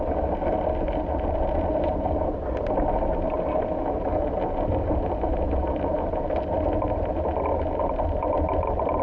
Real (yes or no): yes